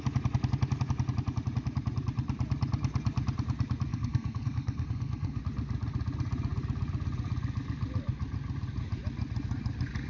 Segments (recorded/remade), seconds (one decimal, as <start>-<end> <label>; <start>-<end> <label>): 0.0-3.9 recorded; 3.9-5.4 remade; 5.4-10.1 recorded